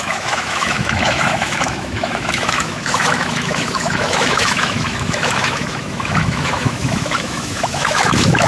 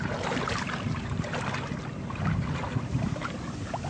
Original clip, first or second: second